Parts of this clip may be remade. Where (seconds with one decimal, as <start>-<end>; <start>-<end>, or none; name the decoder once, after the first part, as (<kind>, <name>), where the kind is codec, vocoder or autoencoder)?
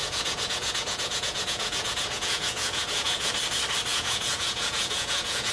0.0-3.3 (vocoder, Vocos); 3.9-5.5